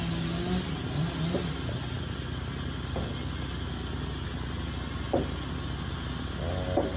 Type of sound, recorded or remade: recorded